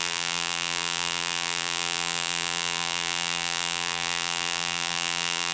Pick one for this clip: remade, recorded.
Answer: remade